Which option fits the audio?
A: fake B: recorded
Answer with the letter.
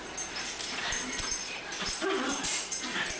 A